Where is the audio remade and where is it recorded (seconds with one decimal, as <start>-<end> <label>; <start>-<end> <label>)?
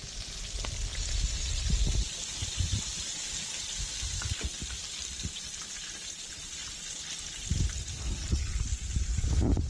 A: 0.0-9.7 recorded